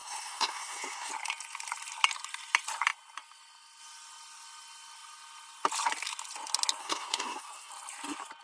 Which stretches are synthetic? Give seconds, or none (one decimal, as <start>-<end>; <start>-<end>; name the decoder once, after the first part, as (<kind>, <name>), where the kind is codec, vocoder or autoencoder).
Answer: 0.0-1.1 (codec, SNAC); 6.8-7.7